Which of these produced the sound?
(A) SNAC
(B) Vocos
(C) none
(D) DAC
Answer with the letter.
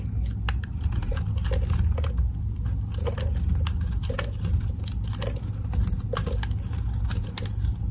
C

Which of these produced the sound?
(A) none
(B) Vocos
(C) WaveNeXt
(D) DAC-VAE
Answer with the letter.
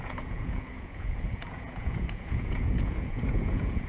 B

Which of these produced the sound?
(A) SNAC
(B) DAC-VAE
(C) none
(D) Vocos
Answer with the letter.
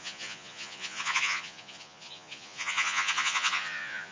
D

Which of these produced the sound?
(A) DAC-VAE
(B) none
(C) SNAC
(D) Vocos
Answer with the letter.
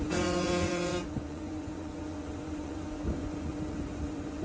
D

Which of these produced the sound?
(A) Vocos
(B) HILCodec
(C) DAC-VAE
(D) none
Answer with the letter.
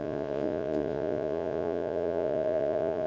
A